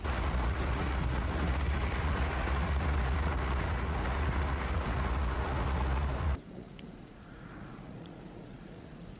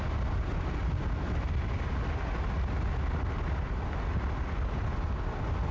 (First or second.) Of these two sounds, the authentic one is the second